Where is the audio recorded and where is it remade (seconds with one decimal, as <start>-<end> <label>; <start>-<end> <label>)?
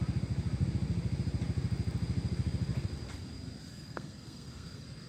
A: 0.0-3.7 recorded; 3.7-5.1 remade